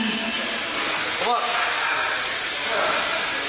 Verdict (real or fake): real